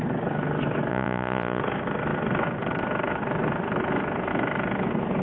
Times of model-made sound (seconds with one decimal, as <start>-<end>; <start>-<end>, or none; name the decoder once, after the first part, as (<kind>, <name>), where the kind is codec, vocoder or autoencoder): 0.9-1.6 (vocoder, Vocos)